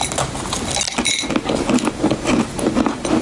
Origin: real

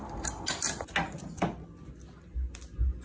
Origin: real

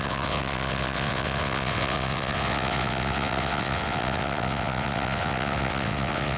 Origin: fake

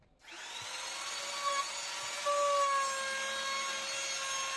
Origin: real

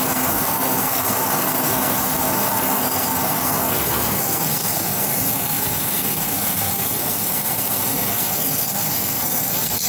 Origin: fake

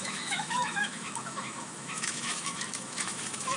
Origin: fake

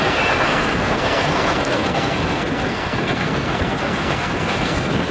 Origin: fake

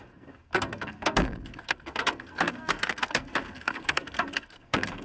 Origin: fake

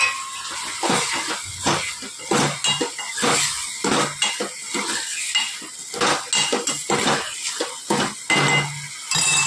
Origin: real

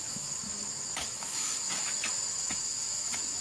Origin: fake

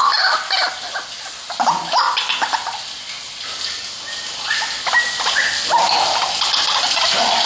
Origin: real